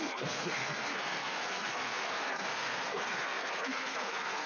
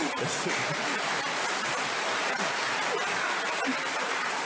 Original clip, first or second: second